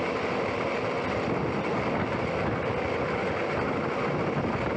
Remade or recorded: recorded